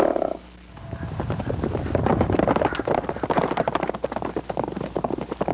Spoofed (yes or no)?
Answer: no